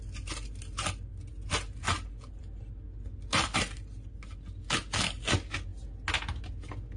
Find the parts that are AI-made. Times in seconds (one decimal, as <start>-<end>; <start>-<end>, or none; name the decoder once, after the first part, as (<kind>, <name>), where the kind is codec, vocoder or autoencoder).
none